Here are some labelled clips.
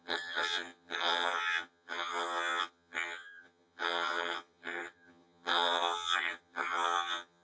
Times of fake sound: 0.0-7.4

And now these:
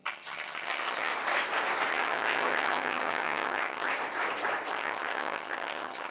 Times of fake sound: 0.0-1.1; 1.9-3.9; 4.7-6.1